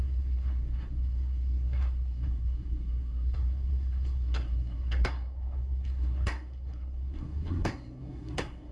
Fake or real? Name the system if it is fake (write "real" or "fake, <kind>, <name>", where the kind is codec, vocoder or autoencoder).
fake, codec, SNAC